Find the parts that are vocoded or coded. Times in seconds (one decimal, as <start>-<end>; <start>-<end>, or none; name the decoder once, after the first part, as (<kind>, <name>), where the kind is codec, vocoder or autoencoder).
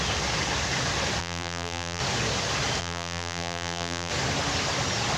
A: 1.2-2.0 (vocoder, BigVGAN v2); 2.8-4.1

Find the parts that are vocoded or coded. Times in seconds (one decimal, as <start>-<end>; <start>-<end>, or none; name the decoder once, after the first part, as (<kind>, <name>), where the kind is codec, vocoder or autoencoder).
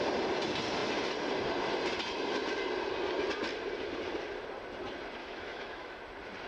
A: 5.2-6.0 (autoencoder, DAC-VAE)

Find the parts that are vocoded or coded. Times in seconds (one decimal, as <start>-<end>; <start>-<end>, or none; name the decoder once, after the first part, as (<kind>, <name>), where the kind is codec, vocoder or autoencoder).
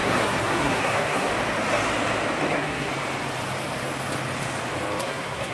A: 0.0-1.3 (codec, SNAC); 2.5-2.9; 5.0-5.5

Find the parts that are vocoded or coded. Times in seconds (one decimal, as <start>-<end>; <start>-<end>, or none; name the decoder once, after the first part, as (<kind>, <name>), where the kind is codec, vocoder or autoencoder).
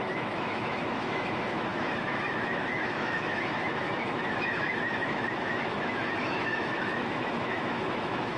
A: 0.0-8.4 (autoencoder, DAC-VAE)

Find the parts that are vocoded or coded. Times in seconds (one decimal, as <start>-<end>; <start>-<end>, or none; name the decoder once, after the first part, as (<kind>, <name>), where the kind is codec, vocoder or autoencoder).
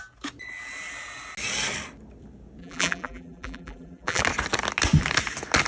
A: 2.6-4.2 (vocoder, BigVGAN v2)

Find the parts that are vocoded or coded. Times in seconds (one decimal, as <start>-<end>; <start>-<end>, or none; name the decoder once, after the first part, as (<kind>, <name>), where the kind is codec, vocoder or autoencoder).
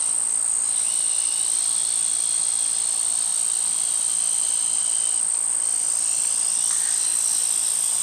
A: none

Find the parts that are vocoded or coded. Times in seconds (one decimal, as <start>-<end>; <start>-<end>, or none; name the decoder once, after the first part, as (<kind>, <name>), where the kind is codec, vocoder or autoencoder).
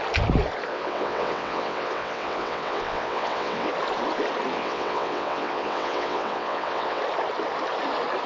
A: 0.7-3.7 (vocoder, WaveNeXt); 4.5-7.0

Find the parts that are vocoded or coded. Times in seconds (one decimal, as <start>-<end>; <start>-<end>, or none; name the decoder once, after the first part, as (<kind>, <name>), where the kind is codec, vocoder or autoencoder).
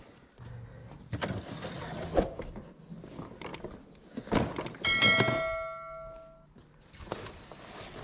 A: none